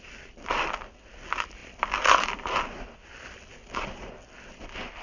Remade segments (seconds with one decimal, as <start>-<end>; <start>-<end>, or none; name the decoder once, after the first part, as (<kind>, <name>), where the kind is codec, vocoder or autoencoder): none